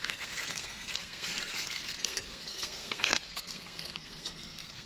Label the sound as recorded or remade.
remade